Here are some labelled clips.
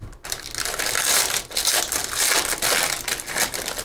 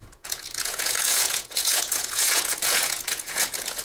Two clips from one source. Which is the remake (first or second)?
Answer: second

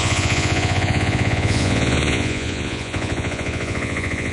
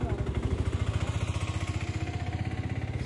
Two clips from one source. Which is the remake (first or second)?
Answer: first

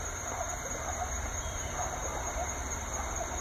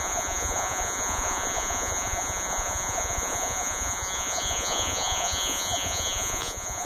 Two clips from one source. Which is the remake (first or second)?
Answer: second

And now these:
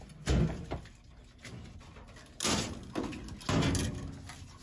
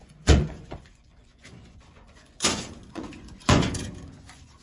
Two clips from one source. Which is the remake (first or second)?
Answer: second